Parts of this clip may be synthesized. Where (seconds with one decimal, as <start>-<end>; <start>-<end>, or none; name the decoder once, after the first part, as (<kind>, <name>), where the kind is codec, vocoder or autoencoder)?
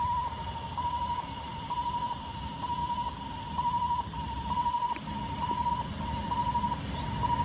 none